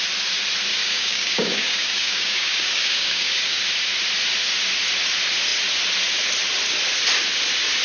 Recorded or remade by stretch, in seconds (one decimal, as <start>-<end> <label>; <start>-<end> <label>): 0.0-0.7 recorded; 0.7-3.6 remade; 3.6-7.8 recorded